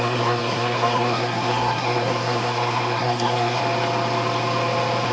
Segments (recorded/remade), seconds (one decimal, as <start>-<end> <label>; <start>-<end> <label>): 0.0-3.6 remade; 3.6-5.1 recorded